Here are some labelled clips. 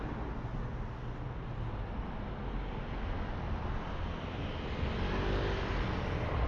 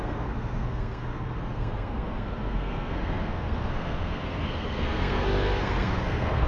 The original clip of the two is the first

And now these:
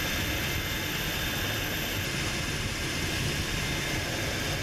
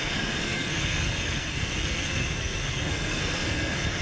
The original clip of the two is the first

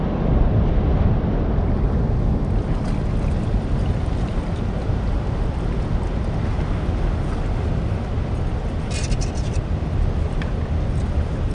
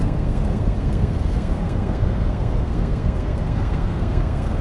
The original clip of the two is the first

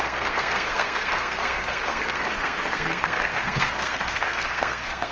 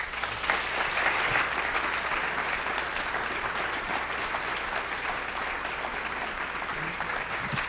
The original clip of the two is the second